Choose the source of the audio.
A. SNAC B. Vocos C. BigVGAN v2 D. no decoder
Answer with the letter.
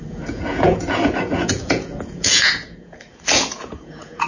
B